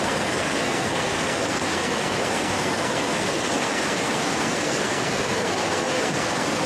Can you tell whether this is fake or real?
fake